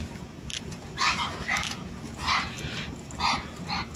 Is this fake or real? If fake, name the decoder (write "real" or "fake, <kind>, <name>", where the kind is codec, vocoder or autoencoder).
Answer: real